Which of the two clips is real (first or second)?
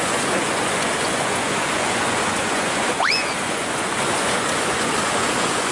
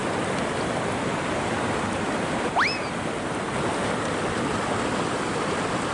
second